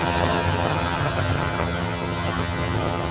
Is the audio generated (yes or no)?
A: yes